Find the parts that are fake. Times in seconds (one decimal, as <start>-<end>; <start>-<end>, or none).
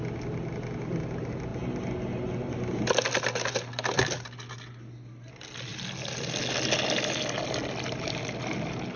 none